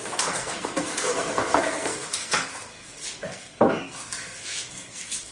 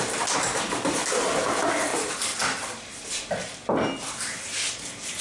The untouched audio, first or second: second